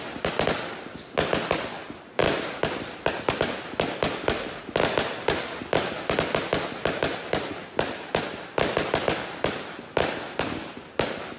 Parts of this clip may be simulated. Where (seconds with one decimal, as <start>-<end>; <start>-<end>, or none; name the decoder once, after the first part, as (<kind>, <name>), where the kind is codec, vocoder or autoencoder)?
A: none